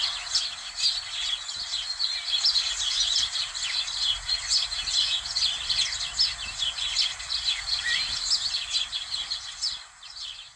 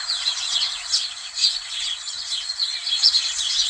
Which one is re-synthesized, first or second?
second